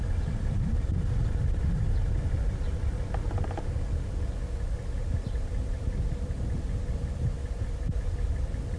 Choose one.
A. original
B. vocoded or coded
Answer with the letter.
A